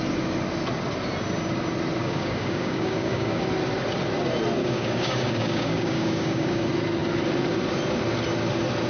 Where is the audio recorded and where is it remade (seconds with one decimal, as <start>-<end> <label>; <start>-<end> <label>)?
0.0-2.0 recorded; 2.0-3.4 remade; 3.4-4.6 recorded; 4.6-6.6 remade; 6.6-8.9 recorded